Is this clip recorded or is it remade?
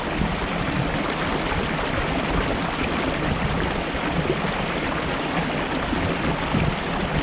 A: recorded